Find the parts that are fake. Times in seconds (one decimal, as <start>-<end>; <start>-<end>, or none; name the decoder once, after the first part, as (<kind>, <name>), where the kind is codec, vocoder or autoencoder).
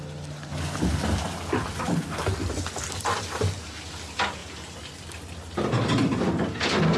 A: none